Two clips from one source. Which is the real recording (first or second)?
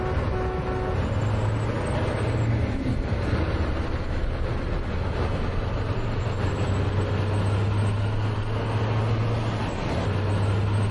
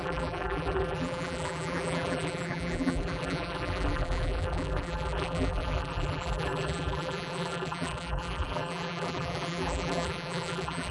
first